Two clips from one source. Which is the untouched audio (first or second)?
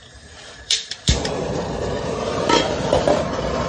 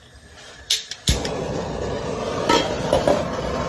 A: second